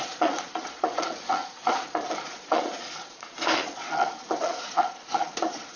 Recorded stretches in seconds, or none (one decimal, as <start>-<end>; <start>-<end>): none